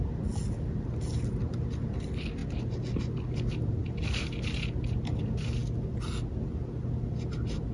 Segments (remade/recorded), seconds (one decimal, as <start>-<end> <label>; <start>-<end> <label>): 0.0-7.7 recorded